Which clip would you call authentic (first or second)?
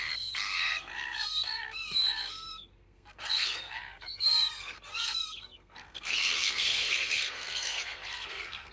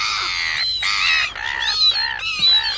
second